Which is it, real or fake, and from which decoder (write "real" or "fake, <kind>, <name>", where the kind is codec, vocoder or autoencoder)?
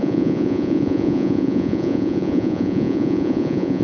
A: fake, vocoder, Vocos